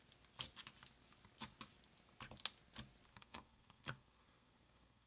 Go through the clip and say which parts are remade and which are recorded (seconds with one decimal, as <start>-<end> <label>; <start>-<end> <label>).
0.0-3.1 recorded; 3.1-5.1 remade